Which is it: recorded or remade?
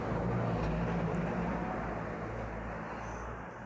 recorded